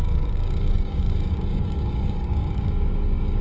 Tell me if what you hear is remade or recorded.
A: remade